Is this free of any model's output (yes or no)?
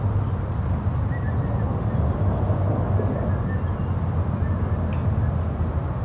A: yes